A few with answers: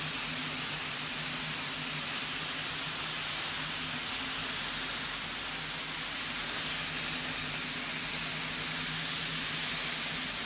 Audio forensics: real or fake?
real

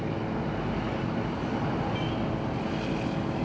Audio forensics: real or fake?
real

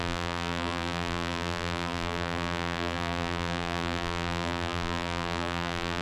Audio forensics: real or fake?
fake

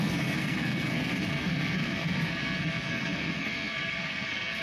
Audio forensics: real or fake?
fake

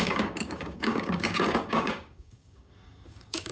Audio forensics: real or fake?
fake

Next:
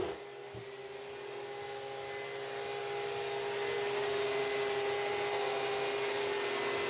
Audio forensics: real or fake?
real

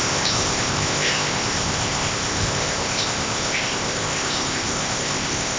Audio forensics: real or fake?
fake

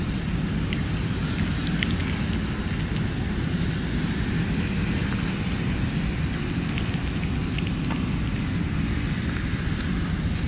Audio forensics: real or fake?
real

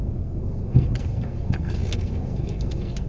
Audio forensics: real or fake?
fake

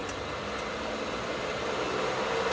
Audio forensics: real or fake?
real